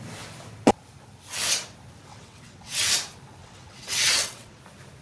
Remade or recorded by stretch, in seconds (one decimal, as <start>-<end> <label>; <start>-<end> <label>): 0.0-2.1 recorded; 2.1-2.9 remade; 2.9-3.4 recorded; 3.4-4.6 remade; 4.6-5.0 recorded

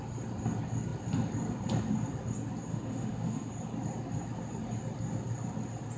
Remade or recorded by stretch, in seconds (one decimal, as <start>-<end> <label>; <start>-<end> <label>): 0.0-2.7 recorded; 2.7-3.5 remade; 3.5-6.0 recorded

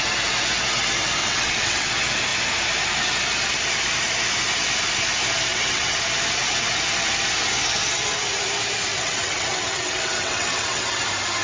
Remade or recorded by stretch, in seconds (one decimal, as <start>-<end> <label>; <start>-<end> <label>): 0.0-1.2 recorded; 1.2-1.9 remade; 1.9-5.5 recorded; 5.5-6.0 remade; 6.0-8.9 recorded; 8.9-11.0 remade; 11.0-11.4 recorded

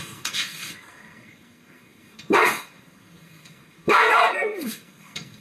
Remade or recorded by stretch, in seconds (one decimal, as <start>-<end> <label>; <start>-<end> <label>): 0.0-5.4 remade